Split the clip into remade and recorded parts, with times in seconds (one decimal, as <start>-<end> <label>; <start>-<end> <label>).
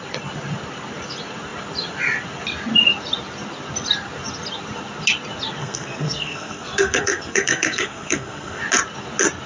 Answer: 0.0-5.6 recorded; 5.6-8.6 remade; 8.6-9.5 recorded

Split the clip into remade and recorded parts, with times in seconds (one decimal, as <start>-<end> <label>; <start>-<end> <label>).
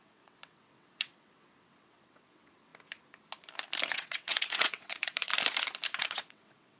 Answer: 0.0-2.7 remade; 2.7-3.9 recorded; 3.9-5.3 remade; 5.3-6.0 recorded; 6.0-6.8 remade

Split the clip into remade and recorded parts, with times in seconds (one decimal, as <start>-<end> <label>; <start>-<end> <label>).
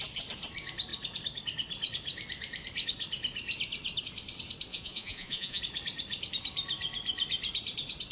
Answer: 0.0-4.7 recorded; 4.7-5.6 remade; 5.6-8.1 recorded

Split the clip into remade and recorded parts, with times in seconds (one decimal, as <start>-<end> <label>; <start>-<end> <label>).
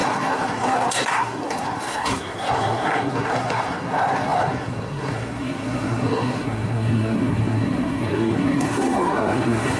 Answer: 0.0-9.8 remade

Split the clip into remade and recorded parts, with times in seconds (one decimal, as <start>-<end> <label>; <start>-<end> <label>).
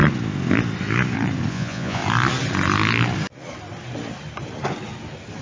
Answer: 0.0-1.5 recorded; 1.5-2.0 remade; 2.0-5.4 recorded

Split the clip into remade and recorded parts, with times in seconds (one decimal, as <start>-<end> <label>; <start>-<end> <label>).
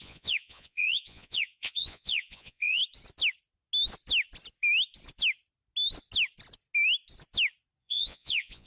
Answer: 0.0-2.8 remade; 2.8-7.8 recorded; 7.8-8.7 remade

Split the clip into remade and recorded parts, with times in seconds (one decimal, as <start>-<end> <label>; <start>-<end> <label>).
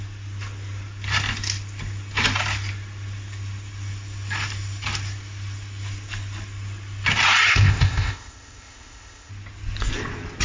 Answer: 0.0-7.5 recorded; 7.5-9.3 remade; 9.3-10.4 recorded